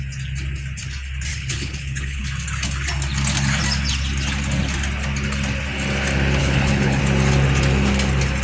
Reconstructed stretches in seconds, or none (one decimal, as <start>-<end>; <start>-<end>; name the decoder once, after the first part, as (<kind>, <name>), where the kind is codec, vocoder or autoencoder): 1.3-2.2 (codec, HILCodec); 6.4-7.0